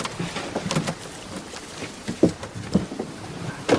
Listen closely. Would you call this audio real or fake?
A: fake